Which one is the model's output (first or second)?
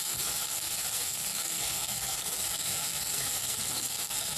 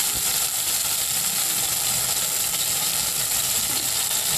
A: first